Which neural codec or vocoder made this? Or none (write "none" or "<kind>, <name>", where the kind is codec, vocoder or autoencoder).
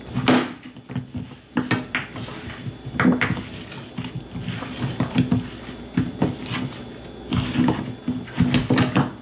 none